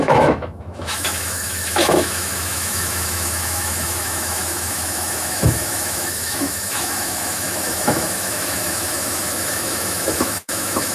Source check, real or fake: fake